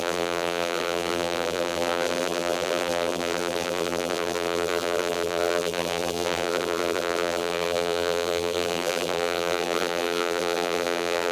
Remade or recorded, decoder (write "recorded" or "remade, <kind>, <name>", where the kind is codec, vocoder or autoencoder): remade, vocoder, BigVGAN v2